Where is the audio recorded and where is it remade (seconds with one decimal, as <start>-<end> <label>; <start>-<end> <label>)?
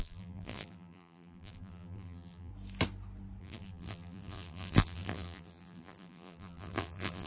0.0-2.5 remade; 2.5-3.4 recorded; 3.4-7.3 remade